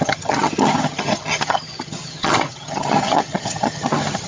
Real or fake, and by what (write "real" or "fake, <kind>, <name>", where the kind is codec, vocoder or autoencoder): fake, vocoder, HiFi-GAN